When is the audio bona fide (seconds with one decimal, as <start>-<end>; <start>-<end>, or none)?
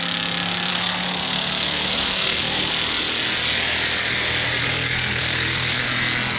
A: 0.0-0.7; 2.7-4.6; 5.8-6.4